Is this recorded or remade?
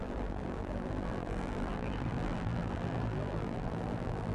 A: remade